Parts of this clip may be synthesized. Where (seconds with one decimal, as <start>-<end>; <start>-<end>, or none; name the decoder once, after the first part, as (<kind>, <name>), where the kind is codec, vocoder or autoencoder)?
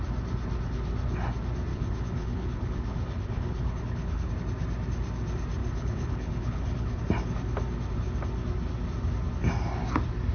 1.7-4.3 (codec, HILCodec); 5.6-7.0